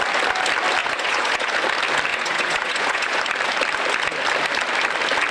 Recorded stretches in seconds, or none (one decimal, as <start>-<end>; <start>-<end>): 0.0-0.8; 1.5-2.1; 3.2-5.3